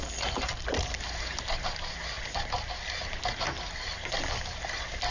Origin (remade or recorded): recorded